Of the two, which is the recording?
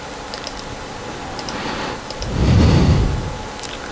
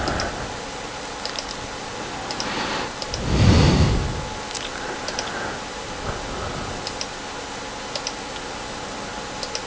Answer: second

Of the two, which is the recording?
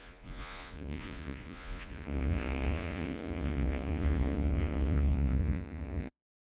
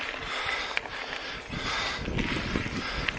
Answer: second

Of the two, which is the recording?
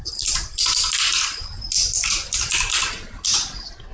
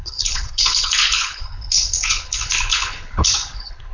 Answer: first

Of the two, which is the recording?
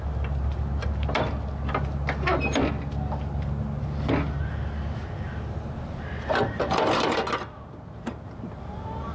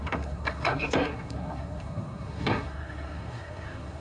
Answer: first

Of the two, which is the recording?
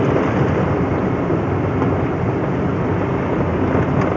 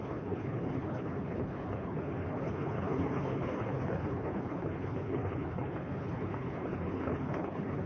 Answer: first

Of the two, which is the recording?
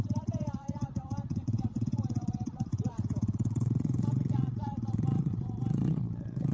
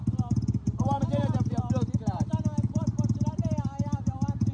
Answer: second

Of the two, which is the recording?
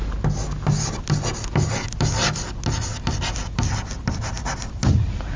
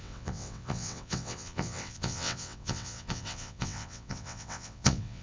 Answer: first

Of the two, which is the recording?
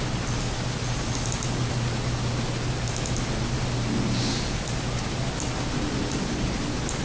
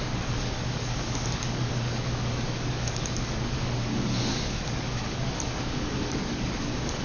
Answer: first